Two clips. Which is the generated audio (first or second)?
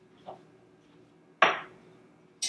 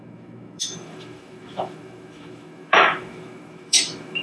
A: second